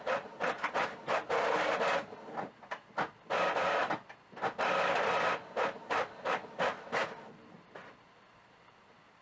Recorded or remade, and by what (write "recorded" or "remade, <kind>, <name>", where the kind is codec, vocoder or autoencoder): recorded